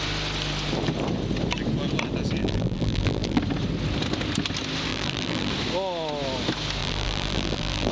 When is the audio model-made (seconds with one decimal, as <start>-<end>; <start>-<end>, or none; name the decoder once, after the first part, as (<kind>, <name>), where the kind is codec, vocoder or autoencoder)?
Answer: 2.4-3.4 (vocoder, BigVGAN v2); 4.9-5.5; 6.8-7.9